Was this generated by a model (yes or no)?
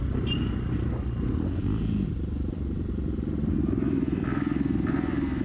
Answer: no